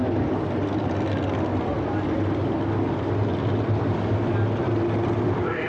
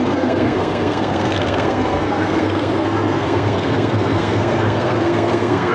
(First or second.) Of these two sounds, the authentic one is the first